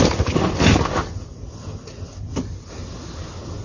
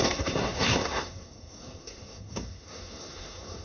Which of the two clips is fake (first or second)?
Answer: second